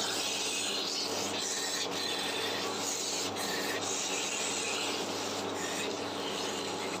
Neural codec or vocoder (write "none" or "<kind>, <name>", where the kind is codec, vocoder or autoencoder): none